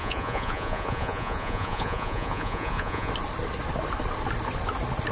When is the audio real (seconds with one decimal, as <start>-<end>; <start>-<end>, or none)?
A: 3.1-5.1